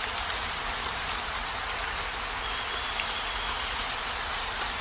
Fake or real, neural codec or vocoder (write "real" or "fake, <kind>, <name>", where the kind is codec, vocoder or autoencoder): real